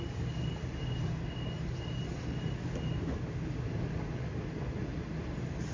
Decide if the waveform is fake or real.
real